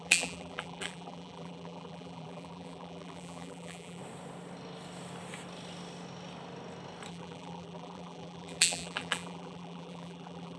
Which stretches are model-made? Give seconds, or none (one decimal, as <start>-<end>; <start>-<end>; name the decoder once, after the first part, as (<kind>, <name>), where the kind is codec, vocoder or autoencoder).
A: 0.0-4.0 (vocoder, BigVGAN v2); 7.1-10.6

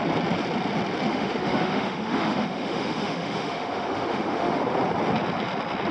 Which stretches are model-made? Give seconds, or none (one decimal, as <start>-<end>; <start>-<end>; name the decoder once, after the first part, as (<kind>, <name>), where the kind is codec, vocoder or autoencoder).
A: 1.1-4.6 (autoencoder, DAC-VAE)

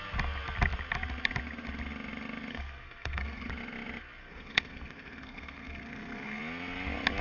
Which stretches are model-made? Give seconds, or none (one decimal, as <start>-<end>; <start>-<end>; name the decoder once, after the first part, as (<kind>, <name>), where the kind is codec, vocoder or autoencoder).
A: 2.5-3.5 (codec, SNAC); 4.2-6.4

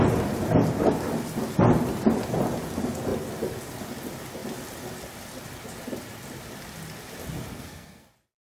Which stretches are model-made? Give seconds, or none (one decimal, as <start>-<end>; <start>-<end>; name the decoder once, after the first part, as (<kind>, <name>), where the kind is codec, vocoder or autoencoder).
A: 7.5-8.1 (codec, SNAC)

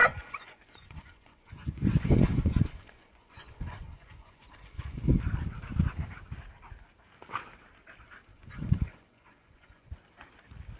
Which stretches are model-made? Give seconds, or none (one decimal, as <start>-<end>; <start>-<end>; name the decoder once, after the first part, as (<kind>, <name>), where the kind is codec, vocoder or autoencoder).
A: 0.0-5.2 (vocoder, Vocos); 8.3-9.9

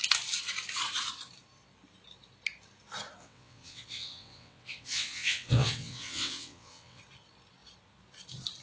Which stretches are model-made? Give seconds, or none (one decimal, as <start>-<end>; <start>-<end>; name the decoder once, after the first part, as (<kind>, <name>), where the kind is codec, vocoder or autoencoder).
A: 3.2-7.0 (vocoder, WaveNeXt)

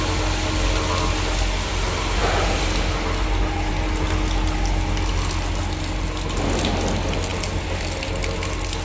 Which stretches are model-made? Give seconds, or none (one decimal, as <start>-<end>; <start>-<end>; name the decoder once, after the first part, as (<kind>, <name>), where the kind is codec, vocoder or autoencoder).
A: none